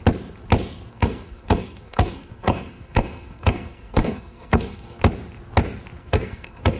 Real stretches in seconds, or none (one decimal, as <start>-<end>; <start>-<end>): 0.0-0.9; 5.0-6.0